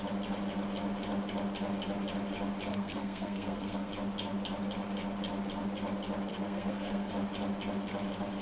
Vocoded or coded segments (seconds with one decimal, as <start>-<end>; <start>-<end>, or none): 2.7-3.9; 6.3-7.1